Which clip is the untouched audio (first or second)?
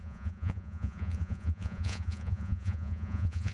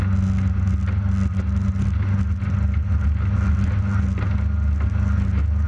second